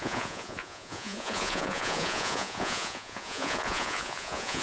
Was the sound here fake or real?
fake